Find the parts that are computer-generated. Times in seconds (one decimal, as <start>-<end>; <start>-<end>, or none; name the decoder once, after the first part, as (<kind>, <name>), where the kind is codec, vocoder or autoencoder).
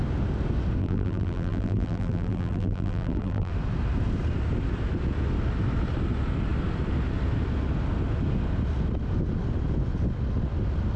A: 0.8-3.5 (vocoder, BigVGAN v2)